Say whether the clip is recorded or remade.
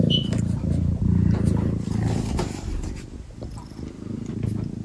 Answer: recorded